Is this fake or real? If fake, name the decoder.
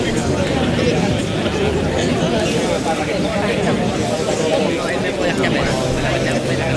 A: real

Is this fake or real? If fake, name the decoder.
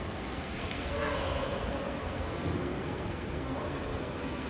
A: fake, codec, SNAC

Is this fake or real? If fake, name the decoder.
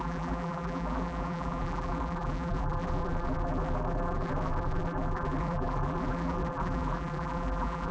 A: fake, vocoder, BigVGAN v2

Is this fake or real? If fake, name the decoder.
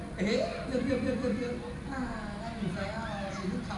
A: real